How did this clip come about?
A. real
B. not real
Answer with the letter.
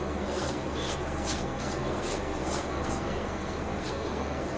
B